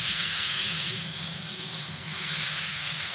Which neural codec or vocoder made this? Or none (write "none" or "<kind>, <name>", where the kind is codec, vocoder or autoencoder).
codec, SNAC